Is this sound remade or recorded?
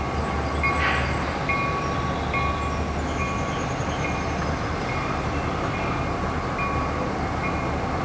recorded